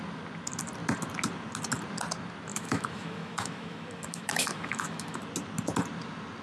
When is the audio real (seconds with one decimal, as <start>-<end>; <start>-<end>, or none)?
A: 0.0-2.5; 5.2-6.4